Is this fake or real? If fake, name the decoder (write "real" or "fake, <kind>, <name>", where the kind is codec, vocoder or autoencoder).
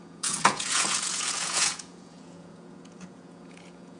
fake, vocoder, Vocos